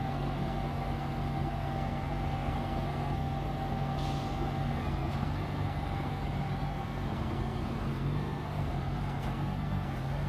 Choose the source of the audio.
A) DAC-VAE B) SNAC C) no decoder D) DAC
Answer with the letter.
B